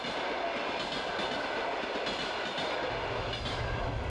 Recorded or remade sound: recorded